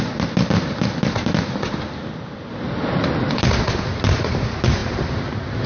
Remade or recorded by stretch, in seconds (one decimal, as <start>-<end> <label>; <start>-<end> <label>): 0.0-5.7 recorded